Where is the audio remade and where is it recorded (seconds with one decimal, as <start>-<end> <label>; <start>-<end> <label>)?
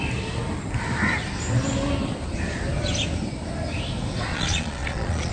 0.0-4.3 recorded; 4.3-5.3 remade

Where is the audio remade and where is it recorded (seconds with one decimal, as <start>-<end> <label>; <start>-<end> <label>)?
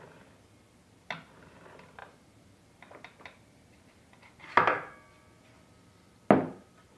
0.0-7.0 recorded